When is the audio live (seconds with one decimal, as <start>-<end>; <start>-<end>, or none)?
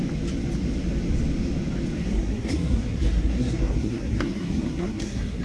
0.0-2.0